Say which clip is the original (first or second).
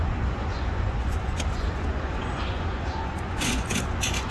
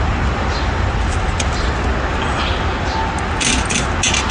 second